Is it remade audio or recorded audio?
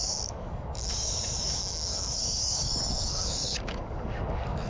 remade